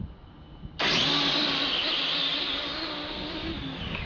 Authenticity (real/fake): real